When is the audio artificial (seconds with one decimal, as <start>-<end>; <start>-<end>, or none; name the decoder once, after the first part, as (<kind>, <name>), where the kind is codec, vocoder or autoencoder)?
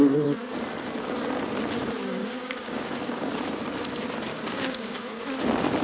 2.2-3.3 (codec, DAC); 4.3-5.2